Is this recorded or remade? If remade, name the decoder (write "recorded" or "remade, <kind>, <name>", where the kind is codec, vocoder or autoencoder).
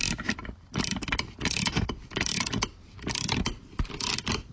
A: recorded